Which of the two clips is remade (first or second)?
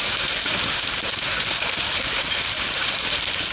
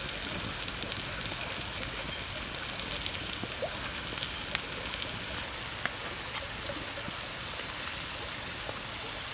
first